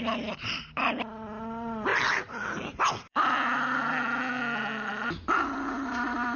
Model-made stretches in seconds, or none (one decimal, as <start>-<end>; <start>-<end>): none